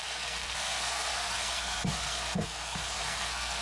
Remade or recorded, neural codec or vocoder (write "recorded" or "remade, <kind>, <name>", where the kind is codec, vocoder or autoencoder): remade, codec, SNAC